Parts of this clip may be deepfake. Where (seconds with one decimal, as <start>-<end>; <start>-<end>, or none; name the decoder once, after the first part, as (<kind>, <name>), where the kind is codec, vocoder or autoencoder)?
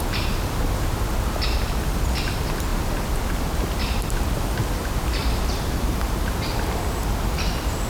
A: 2.7-4.6 (vocoder, BigVGAN v2); 5.2-6.2